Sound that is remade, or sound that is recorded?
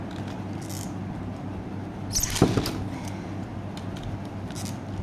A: recorded